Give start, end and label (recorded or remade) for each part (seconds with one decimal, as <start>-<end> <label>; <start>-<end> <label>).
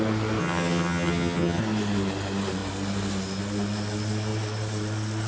0.0-0.4 recorded; 0.4-1.6 remade; 1.6-5.3 recorded